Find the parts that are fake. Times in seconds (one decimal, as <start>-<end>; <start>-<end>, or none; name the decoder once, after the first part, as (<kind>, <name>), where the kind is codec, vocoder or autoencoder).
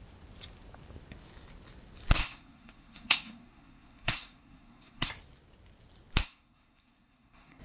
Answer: 2.2-5.1 (codec, SNAC); 6.2-7.6